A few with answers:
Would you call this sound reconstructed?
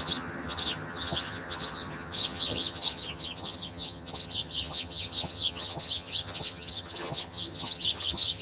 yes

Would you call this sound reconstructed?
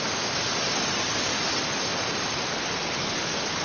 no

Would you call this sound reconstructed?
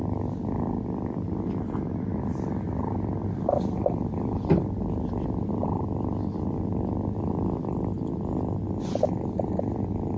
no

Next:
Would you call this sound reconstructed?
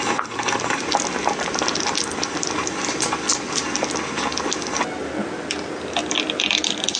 no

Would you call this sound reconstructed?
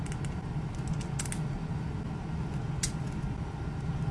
no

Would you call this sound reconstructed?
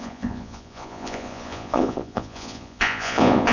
yes